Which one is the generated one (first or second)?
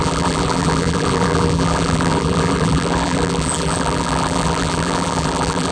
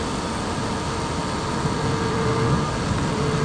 first